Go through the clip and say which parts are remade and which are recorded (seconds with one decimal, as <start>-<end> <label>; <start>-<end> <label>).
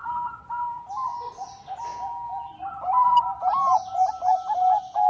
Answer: 0.0-5.1 recorded